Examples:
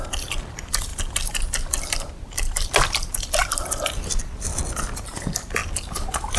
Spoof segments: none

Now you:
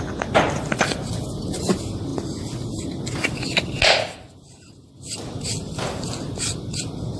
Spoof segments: none

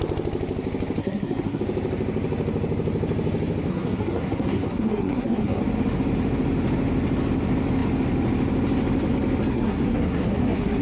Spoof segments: 1.0-1.6 (codec, SNAC); 3.7-5.6; 9.5-10.8

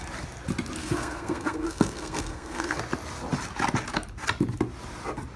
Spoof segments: 0.8-2.8 (codec, SNAC)